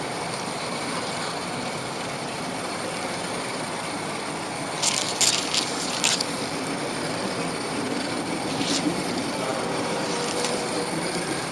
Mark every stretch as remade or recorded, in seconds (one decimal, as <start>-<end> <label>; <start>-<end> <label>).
0.0-11.5 remade